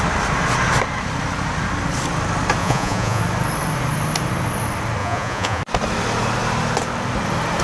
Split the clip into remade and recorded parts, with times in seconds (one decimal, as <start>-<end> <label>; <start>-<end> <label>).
0.0-2.6 recorded; 2.6-3.2 remade; 3.2-5.0 recorded; 5.0-5.6 remade; 5.6-7.6 recorded